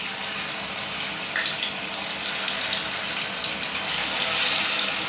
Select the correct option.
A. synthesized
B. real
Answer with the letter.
B